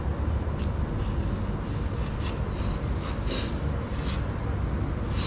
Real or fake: real